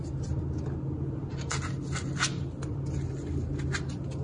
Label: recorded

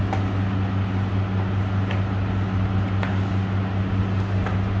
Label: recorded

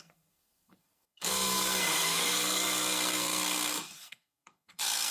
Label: remade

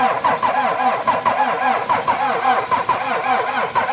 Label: recorded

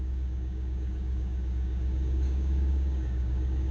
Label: remade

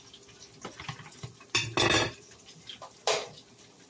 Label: recorded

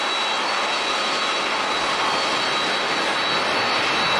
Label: recorded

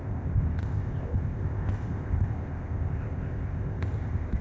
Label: remade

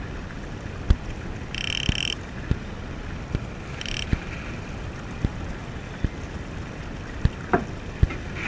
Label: recorded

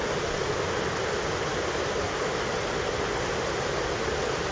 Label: recorded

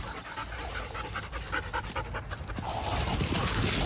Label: recorded